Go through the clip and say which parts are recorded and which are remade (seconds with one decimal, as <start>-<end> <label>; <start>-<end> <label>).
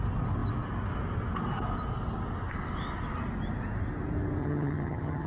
0.0-4.4 recorded; 4.4-5.3 remade